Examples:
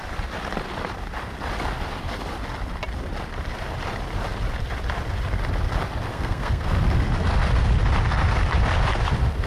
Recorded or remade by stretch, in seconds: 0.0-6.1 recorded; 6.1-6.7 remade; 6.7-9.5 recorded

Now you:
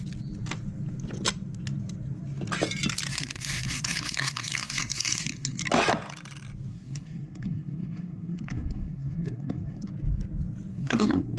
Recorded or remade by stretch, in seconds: 0.0-3.1 recorded; 3.1-5.6 remade; 5.6-6.7 recorded; 6.7-9.9 remade; 9.9-10.7 recorded; 10.7-11.4 remade

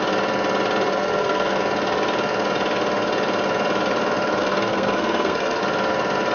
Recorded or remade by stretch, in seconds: 0.0-0.9 recorded; 0.9-1.6 remade; 1.6-4.4 recorded; 4.4-5.6 remade; 5.6-6.3 recorded

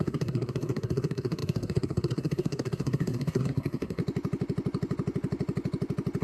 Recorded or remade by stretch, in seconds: 0.0-4.0 remade; 4.0-6.2 recorded